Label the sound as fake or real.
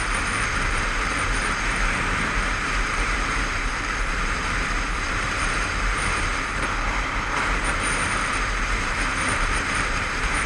fake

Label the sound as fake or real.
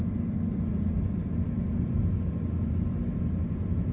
real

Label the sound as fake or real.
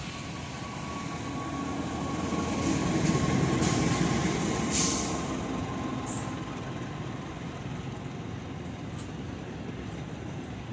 real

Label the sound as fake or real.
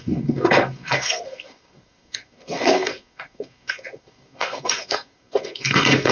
fake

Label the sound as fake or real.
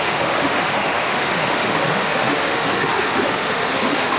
fake